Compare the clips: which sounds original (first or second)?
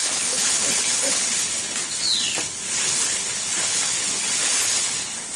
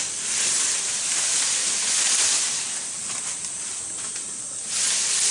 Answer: second